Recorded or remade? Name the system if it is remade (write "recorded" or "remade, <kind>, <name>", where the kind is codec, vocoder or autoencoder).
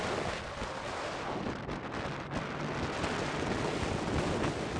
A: recorded